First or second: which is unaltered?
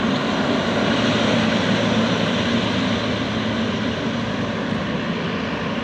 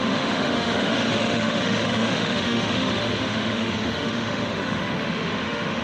first